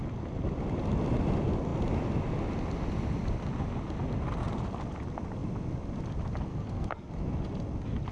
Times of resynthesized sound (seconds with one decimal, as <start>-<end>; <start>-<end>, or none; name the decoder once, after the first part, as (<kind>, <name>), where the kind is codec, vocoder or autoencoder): 6.5-7.1 (codec, SNAC)